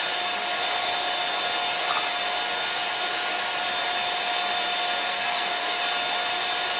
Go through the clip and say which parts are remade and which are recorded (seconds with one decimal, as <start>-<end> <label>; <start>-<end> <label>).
0.0-5.1 recorded; 5.1-5.8 remade; 5.8-6.8 recorded